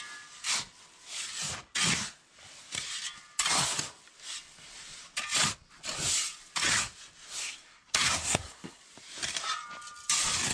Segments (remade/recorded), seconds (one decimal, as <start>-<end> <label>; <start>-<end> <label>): 0.0-7.4 recorded; 7.4-8.8 remade; 8.8-10.5 recorded